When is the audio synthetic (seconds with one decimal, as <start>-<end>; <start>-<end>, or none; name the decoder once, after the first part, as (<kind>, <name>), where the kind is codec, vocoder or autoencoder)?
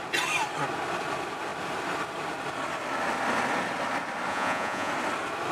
4.3-4.9 (vocoder, Vocos)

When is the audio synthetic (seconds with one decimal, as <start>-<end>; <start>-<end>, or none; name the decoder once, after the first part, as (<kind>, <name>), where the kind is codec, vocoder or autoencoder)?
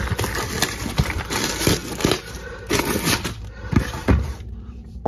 1.8-2.8 (vocoder, BigVGAN v2); 4.0-5.1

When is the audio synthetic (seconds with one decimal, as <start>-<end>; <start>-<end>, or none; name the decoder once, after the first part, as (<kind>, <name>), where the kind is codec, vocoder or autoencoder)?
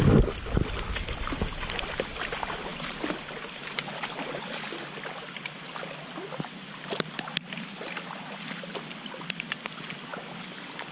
none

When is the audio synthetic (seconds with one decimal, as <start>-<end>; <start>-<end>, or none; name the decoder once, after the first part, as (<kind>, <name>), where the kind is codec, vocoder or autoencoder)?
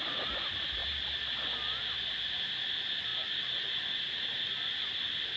0.0-0.8 (vocoder, BigVGAN v2); 2.3-5.4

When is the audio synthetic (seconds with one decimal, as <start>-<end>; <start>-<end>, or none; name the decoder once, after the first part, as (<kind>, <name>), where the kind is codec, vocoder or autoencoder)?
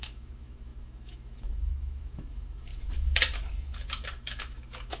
0.0-5.0 (autoencoder, DAC-VAE)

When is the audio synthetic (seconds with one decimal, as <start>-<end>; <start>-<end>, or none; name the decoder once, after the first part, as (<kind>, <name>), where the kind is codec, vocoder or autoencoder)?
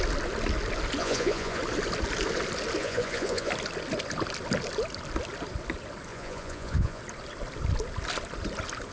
1.0-1.6 (vocoder, Vocos); 2.8-3.5; 6.1-7.0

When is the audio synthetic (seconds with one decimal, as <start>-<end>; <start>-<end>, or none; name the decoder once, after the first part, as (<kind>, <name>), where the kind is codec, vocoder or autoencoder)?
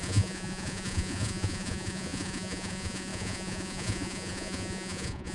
0.0-5.3 (vocoder, Vocos)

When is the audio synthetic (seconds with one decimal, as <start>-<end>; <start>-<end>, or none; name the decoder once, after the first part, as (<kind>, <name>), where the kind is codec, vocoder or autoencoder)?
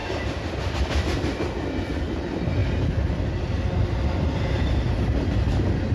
none